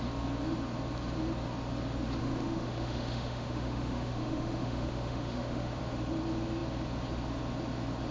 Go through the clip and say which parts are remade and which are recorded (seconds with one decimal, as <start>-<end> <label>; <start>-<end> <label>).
0.0-2.2 recorded; 2.2-5.8 remade; 5.8-8.1 recorded